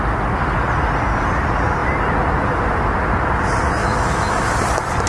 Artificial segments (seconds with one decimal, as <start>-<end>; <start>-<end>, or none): 3.8-4.5

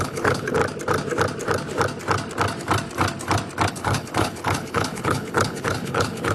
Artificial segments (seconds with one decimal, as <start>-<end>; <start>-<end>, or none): 0.0-0.6; 3.7-6.3